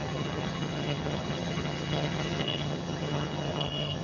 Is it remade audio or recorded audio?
remade